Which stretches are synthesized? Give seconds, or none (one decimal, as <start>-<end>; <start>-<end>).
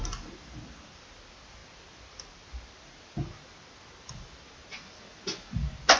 none